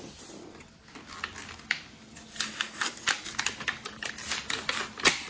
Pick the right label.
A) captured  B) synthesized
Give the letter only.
A